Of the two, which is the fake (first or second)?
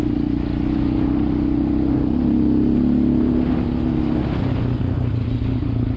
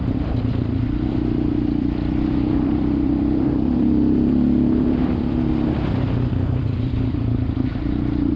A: second